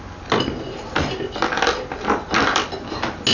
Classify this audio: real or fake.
real